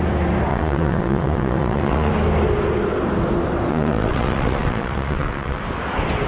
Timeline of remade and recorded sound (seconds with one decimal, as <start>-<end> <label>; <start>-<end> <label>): 0.0-0.5 recorded; 0.5-2.1 remade; 2.1-3.7 recorded; 3.7-5.6 remade; 5.6-6.3 recorded